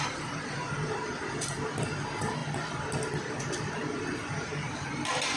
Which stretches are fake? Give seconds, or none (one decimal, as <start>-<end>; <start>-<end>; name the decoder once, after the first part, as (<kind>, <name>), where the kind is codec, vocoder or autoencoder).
none